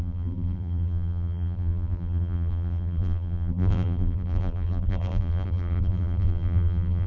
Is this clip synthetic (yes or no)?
yes